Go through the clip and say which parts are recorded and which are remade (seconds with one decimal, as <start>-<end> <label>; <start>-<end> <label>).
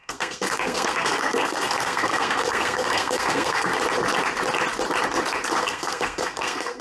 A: 0.0-3.7 remade; 3.7-5.6 recorded; 5.6-6.8 remade